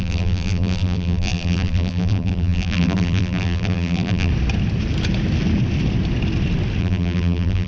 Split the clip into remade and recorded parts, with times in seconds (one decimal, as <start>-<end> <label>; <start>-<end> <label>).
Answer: 0.0-4.3 remade; 4.3-6.8 recorded; 6.8-7.7 remade